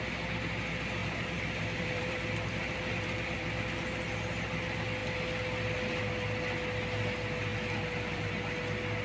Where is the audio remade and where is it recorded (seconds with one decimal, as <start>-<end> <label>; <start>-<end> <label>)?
0.0-1.0 recorded; 1.0-3.8 remade; 3.8-7.5 recorded; 7.5-8.3 remade; 8.3-9.0 recorded